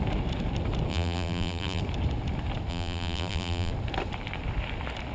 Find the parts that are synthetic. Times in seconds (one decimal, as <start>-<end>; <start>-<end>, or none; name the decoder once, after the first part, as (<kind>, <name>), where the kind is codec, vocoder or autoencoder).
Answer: 0.9-1.8 (vocoder, BigVGAN v2); 2.7-3.7